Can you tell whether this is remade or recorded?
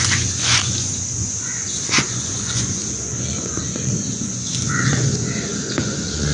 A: remade